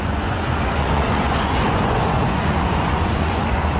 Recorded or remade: remade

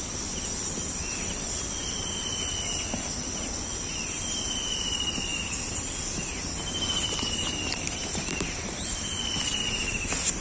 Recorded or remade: recorded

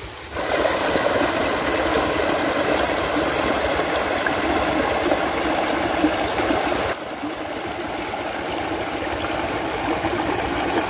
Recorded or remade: recorded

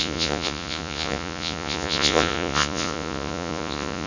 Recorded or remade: remade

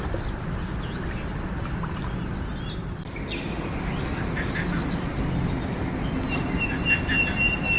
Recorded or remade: recorded